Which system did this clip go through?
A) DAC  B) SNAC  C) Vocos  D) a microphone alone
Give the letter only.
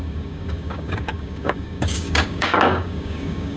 A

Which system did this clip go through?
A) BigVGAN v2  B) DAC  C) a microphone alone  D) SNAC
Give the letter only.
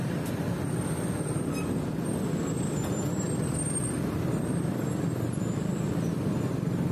C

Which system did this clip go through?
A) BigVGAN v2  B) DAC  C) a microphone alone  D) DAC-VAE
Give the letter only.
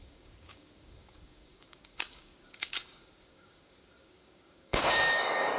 B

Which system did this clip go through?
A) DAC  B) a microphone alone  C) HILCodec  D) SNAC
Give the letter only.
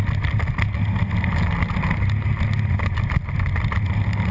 B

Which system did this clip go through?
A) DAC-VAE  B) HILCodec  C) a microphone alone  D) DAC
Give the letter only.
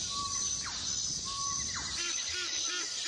C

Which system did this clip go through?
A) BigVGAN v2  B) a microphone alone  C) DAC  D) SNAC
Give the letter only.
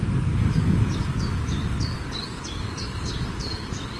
C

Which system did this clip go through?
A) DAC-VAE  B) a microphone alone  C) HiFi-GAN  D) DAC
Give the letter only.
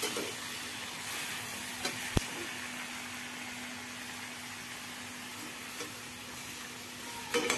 B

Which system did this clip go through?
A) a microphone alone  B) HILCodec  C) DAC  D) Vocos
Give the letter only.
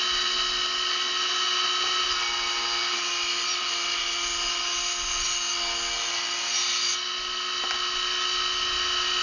A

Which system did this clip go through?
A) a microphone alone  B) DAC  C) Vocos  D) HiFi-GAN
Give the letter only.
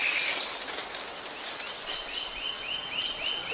A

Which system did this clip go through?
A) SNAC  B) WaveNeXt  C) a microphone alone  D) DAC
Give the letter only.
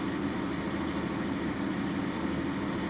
C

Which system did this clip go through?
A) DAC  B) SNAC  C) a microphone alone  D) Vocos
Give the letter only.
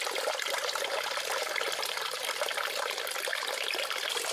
C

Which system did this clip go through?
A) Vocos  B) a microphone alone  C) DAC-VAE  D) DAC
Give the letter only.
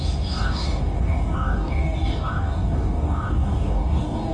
D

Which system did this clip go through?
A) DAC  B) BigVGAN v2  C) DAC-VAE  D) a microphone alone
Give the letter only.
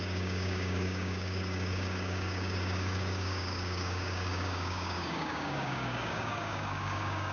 A